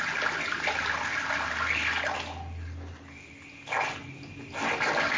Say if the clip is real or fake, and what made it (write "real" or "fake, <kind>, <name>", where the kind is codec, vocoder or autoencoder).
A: real